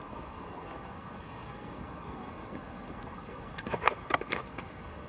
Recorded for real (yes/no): no